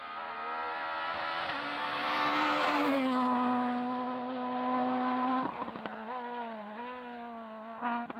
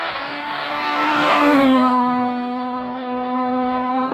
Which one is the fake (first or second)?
second